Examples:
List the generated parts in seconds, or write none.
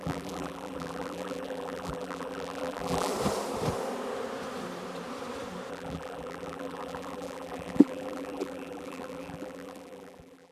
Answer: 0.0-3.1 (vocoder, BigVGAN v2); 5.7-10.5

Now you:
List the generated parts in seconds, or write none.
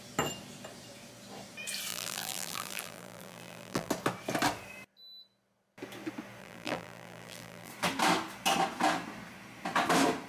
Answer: 1.9-3.9 (vocoder, BigVGAN v2); 6.4-7.7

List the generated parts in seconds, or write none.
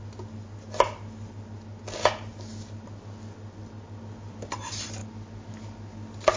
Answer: none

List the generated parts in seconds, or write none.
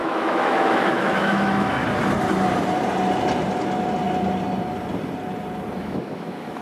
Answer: 0.0-1.8 (autoencoder, DAC-VAE); 5.8-6.6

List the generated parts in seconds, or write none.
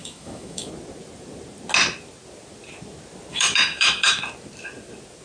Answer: 0.0-0.7 (autoencoder, DAC-VAE); 3.3-4.2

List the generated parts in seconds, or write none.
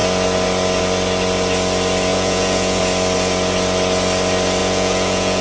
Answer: 2.1-2.8 (vocoder, Vocos); 4.6-5.4